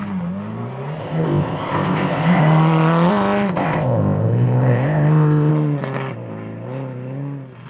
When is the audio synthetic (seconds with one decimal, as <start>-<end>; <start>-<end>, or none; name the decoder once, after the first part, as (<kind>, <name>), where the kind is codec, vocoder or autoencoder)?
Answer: 1.0-2.4 (codec, ZipCodec); 3.1-5.5